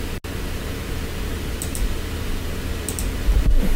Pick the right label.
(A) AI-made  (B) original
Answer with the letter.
B